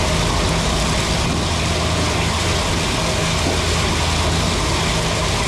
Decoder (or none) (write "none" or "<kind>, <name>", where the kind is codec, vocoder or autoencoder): none